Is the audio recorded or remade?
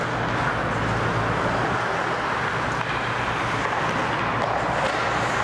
recorded